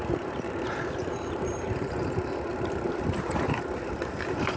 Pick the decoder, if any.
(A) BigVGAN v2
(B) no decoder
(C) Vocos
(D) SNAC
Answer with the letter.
A